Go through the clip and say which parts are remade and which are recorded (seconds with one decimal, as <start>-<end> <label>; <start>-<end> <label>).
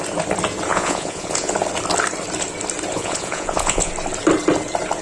0.0-0.7 recorded; 0.7-1.5 remade; 1.5-2.9 recorded; 2.9-3.9 remade; 3.9-5.0 recorded